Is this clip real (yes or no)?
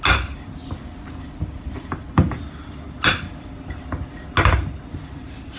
yes